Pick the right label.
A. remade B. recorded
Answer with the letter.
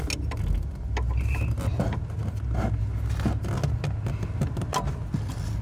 B